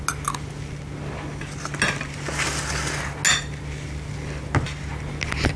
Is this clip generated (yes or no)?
no